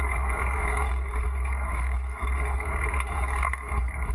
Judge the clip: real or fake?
fake